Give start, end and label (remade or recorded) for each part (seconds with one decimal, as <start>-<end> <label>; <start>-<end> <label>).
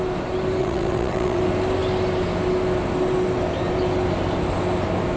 0.0-0.6 recorded; 0.6-1.4 remade; 1.4-5.2 recorded